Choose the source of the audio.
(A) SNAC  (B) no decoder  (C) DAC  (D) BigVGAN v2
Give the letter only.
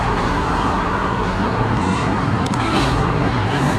A